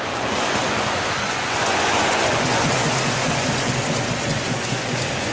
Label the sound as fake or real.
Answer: fake